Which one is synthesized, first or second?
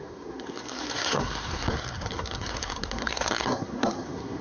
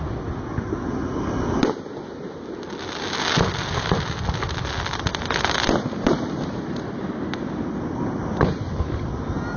first